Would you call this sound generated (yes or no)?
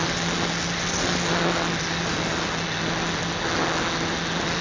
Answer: no